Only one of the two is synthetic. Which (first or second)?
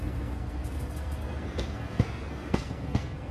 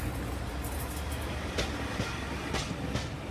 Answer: first